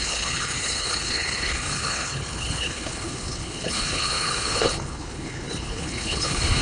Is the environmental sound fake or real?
fake